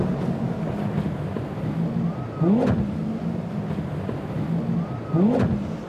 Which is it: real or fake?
real